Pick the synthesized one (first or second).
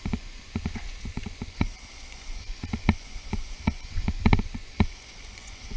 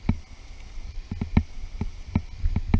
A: first